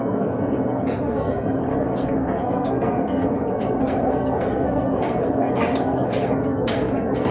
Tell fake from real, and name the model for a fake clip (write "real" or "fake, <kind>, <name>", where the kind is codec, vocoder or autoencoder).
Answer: fake, codec, SNAC